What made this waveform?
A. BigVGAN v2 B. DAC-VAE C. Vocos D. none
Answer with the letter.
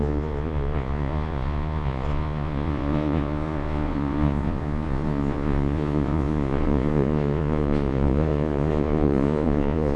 C